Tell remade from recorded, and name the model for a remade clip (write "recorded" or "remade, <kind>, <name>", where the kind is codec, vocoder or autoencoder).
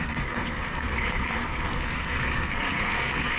remade, codec, SNAC